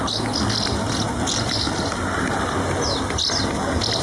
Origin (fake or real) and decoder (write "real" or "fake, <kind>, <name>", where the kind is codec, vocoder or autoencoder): real